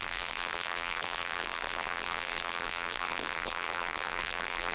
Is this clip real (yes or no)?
no